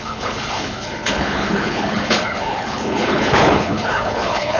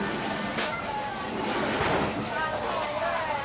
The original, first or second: second